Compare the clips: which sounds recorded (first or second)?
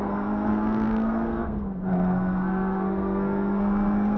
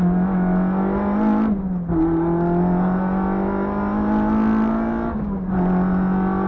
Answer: second